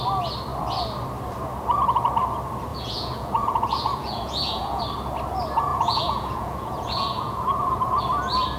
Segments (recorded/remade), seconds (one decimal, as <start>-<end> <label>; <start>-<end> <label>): 0.0-2.7 recorded; 2.7-4.8 remade; 4.8-5.7 recorded; 5.7-8.0 remade; 8.0-8.6 recorded